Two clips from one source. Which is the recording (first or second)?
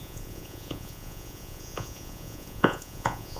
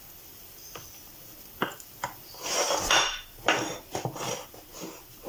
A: second